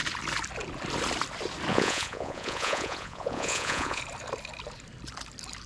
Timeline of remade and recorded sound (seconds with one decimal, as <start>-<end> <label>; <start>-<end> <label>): 0.0-1.7 recorded; 1.7-4.0 remade; 4.0-5.7 recorded